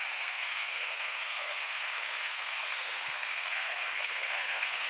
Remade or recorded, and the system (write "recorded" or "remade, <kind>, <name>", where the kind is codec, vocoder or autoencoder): remade, codec, SNAC